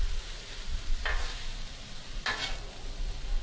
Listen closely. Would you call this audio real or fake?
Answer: real